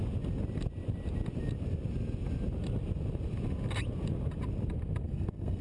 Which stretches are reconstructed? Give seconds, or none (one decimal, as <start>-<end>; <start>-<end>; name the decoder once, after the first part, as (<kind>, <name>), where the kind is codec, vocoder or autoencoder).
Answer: 5.0-5.6 (codec, SNAC)